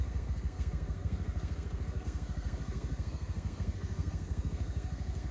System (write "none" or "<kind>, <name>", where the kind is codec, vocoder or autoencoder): codec, SNAC